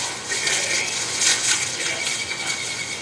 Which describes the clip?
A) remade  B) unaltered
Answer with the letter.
A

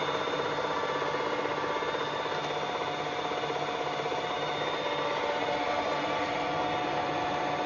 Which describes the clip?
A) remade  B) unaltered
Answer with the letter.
B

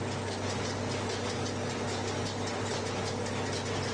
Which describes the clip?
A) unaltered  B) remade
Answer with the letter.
A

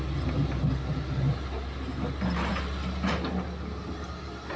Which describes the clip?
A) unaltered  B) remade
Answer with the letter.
A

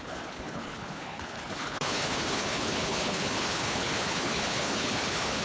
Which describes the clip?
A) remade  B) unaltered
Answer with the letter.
A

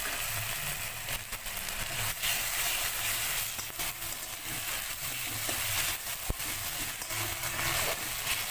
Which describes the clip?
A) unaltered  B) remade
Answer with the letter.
A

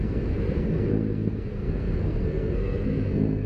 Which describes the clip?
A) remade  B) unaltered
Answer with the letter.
A